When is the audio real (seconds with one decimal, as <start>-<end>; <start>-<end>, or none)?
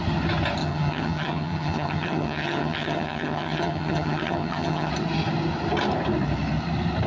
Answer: 0.0-0.6; 4.9-7.1